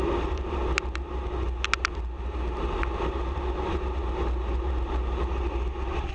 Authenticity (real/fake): real